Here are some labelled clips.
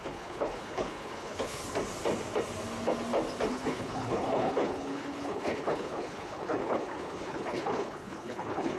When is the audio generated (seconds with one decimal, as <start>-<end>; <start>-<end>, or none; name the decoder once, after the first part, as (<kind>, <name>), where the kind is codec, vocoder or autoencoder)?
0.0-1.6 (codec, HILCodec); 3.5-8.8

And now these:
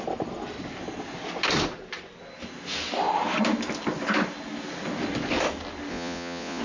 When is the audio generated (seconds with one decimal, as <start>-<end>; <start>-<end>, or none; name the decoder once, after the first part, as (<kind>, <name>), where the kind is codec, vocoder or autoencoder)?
5.9-6.6 (vocoder, Vocos)

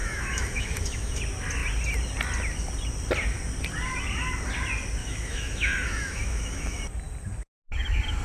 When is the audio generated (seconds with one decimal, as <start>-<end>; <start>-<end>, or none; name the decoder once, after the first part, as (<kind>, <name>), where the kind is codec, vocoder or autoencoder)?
0.0-1.2 (autoencoder, DAC-VAE); 5.0-6.8

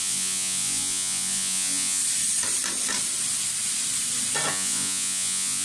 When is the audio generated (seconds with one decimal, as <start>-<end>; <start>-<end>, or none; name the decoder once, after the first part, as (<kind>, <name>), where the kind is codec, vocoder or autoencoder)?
0.0-2.0 (vocoder, Vocos); 4.5-5.6

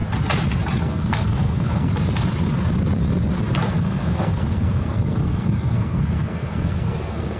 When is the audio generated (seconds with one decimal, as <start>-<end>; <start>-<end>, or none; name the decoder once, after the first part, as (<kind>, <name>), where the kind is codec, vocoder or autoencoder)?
0.8-1.9 (codec, SNAC); 3.7-7.4

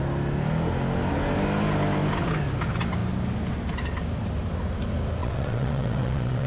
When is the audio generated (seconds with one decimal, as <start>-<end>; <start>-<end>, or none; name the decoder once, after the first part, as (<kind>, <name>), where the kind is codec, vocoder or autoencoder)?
5.2-6.5 (vocoder, WaveNeXt)

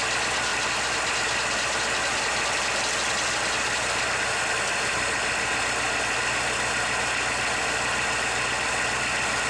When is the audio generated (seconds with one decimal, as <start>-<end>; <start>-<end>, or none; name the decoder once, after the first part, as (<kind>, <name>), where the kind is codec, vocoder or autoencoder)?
none